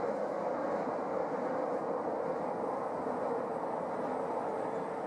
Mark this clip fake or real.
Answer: real